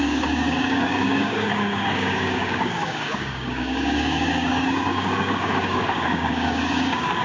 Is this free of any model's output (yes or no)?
no